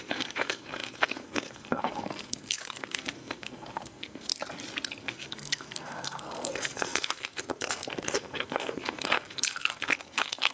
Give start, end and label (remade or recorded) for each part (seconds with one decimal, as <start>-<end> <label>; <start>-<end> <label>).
0.0-4.3 remade; 4.3-5.0 recorded; 5.0-10.5 remade